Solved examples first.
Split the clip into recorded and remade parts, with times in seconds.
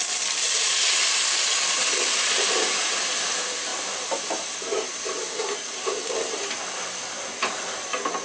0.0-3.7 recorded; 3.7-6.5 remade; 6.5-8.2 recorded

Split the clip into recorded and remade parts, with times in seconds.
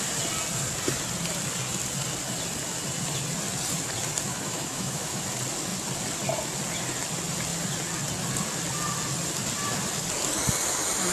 0.0-4.3 recorded; 4.3-5.2 remade; 5.2-11.1 recorded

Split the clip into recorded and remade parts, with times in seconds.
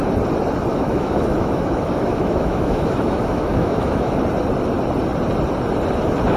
0.0-0.7 recorded; 0.7-4.2 remade; 4.2-6.4 recorded